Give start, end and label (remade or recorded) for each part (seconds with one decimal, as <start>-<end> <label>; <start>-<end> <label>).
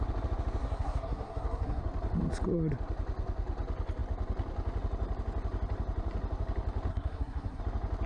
0.0-0.6 recorded; 0.6-1.8 remade; 1.8-6.9 recorded; 6.9-7.6 remade; 7.6-8.1 recorded